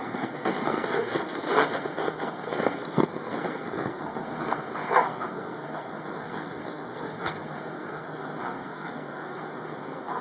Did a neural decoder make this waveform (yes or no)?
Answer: yes